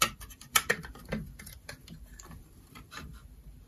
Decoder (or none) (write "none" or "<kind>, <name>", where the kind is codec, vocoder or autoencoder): vocoder, BigVGAN v2